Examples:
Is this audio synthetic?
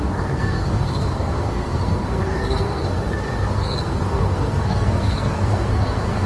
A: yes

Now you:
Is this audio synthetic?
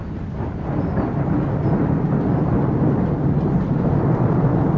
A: no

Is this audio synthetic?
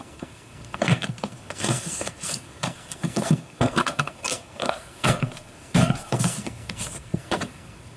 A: yes